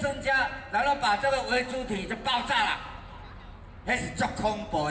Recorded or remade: recorded